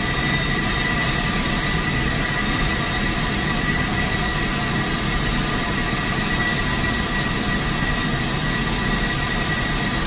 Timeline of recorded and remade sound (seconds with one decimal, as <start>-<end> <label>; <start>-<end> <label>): 0.0-3.9 recorded; 3.9-4.4 remade; 4.4-10.1 recorded

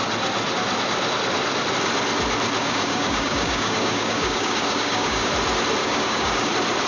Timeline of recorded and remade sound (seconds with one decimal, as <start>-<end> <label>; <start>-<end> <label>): 0.0-2.6 recorded; 2.6-5.3 remade; 5.3-5.8 recorded; 5.8-6.5 remade; 6.5-6.9 recorded

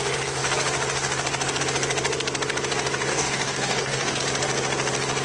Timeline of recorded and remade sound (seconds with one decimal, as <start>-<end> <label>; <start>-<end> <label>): 0.0-3.1 recorded; 3.1-4.2 remade; 4.2-5.2 recorded

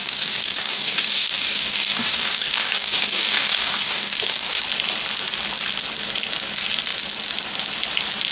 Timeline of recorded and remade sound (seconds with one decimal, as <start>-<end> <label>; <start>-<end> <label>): 0.0-4.6 remade; 4.6-8.3 recorded

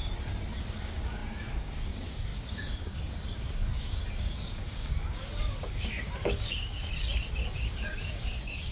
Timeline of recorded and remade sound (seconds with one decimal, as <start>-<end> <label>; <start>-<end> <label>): 0.0-0.6 recorded; 0.6-6.9 remade; 6.9-7.5 recorded; 7.5-8.7 remade

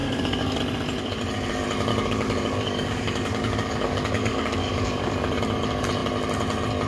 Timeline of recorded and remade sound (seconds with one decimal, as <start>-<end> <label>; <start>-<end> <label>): 0.0-0.6 remade; 0.6-1.9 recorded; 1.9-5.4 remade; 5.4-6.9 recorded